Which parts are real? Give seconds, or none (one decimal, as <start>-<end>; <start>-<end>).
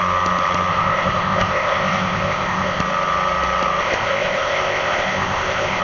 0.0-0.7; 2.8-3.8